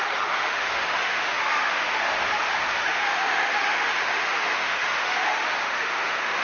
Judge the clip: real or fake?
fake